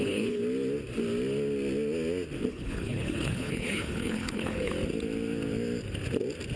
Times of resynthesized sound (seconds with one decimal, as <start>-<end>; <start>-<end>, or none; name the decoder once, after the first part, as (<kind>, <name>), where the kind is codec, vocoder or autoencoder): 0.0-0.4 (codec, HILCodec); 2.5-4.7